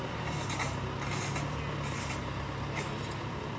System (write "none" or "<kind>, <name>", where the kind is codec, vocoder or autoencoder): none